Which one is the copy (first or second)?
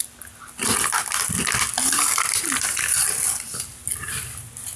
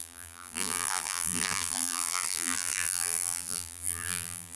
second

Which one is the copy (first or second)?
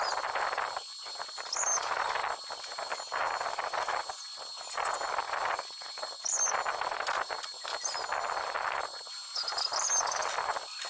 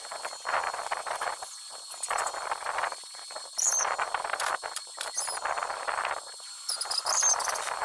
second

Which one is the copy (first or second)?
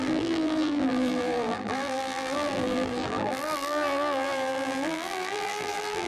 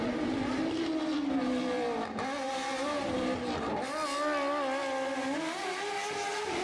first